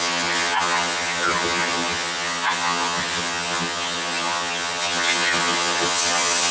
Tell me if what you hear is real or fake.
fake